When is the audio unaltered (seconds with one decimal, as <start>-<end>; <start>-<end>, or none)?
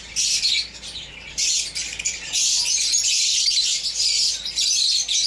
0.0-5.3